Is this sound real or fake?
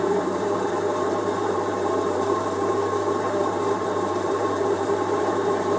fake